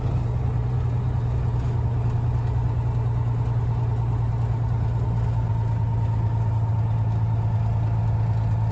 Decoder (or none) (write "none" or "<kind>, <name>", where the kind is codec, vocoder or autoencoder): none